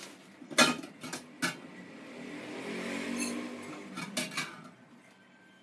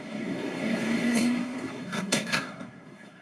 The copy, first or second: second